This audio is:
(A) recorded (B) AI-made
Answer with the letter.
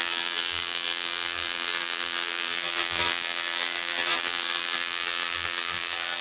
B